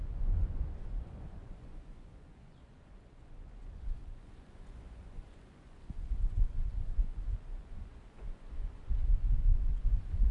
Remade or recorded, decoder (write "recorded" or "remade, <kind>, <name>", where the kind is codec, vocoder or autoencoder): remade, vocoder, Vocos